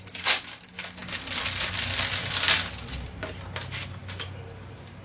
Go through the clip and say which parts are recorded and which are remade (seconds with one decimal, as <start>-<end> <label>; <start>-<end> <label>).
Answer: 0.0-5.0 recorded